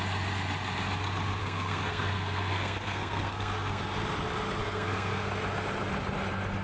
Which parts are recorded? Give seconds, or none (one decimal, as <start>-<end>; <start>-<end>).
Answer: 0.0-1.4; 3.8-4.6; 5.3-6.6